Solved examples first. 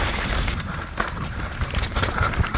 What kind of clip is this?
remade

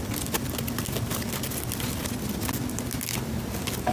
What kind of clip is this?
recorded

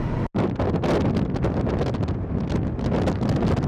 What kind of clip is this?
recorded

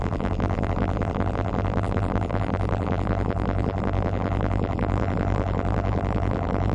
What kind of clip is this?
remade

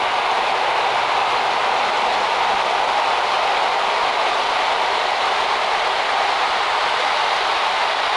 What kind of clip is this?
recorded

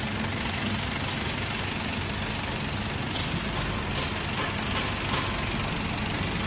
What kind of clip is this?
recorded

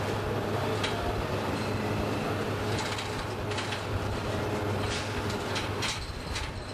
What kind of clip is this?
recorded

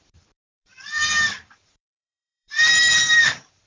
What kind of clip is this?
remade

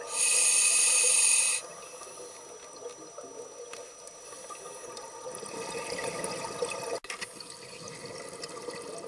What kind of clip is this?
recorded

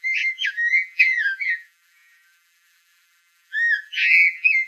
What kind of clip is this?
remade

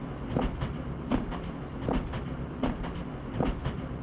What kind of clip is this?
remade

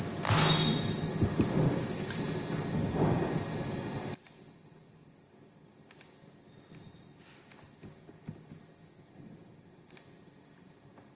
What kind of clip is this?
recorded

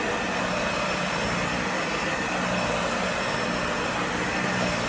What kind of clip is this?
recorded